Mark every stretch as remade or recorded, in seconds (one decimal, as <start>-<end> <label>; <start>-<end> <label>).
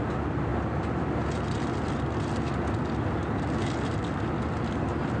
0.0-5.2 recorded